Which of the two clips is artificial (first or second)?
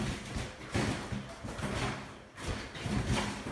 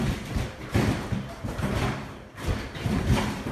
second